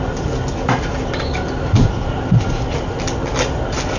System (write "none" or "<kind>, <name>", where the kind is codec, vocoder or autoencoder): none